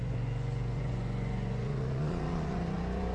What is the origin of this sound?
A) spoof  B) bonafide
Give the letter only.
A